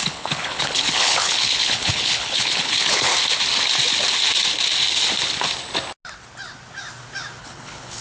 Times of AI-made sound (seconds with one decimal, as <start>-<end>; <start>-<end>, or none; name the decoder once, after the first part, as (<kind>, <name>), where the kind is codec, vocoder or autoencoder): 0.0-3.1 (codec, HILCodec); 7.4-8.0